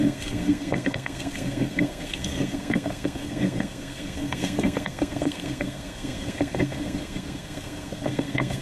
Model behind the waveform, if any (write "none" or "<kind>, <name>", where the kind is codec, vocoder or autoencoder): codec, SNAC